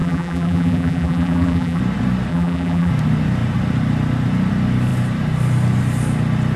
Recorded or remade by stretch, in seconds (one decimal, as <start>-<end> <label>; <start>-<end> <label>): 0.0-1.8 remade; 1.8-2.3 recorded; 2.3-2.9 remade; 2.9-6.6 recorded